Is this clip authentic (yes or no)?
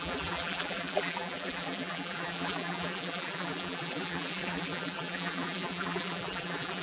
no